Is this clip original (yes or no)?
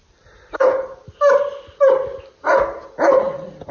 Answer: yes